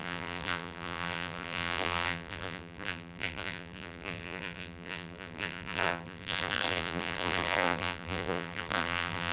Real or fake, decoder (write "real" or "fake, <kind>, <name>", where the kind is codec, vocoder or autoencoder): fake, vocoder, BigVGAN v2